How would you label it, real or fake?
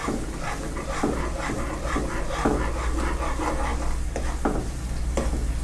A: real